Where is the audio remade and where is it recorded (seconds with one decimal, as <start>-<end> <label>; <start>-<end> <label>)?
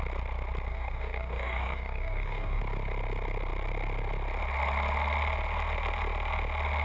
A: 0.0-0.7 recorded; 0.7-2.6 remade; 2.6-6.8 recorded